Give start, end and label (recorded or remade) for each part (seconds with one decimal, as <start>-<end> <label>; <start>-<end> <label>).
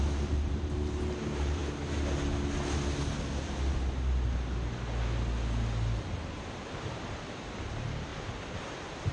0.0-1.6 remade; 1.6-6.2 recorded; 6.2-8.1 remade; 8.1-8.7 recorded; 8.7-9.1 remade